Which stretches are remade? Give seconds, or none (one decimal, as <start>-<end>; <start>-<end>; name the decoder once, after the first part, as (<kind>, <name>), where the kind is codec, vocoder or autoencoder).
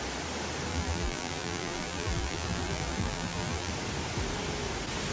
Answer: 0.7-3.7 (vocoder, BigVGAN v2)